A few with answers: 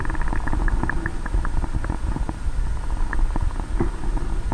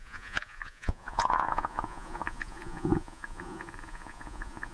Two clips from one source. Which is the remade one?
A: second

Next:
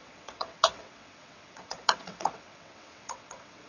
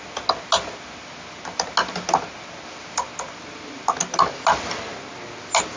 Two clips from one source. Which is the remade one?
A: first